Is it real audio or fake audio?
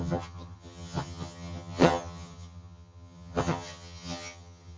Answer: fake